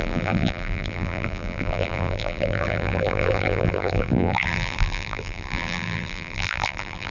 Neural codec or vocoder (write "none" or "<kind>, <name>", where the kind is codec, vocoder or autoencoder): vocoder, BigVGAN v2